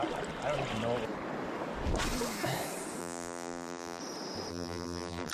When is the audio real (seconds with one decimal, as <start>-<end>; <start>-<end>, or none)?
0.0-3.0; 4.0-4.5